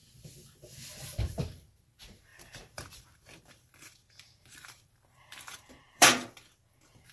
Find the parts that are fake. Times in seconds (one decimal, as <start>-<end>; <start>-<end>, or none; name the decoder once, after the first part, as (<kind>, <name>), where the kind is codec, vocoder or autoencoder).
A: 2.3-6.3 (vocoder, BigVGAN v2)